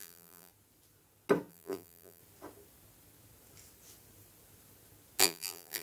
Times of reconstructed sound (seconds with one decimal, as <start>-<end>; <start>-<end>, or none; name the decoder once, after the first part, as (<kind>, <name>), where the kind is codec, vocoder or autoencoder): 0.0-0.5 (vocoder, BigVGAN v2); 1.5-2.2; 5.2-5.8